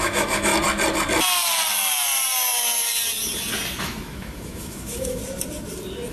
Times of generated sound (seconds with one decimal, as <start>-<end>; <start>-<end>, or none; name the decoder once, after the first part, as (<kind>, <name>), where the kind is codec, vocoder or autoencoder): 0.0-0.5 (autoencoder, DAC-VAE); 3.8-5.2